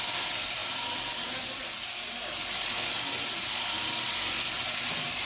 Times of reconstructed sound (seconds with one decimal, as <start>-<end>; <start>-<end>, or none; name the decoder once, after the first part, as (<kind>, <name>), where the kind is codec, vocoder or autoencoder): none